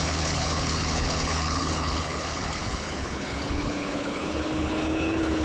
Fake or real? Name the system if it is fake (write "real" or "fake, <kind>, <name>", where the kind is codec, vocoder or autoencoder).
fake, codec, HILCodec